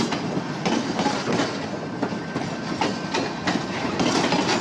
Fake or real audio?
real